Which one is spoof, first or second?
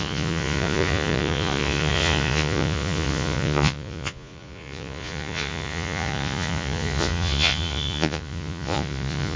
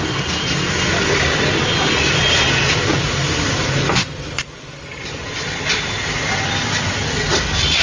first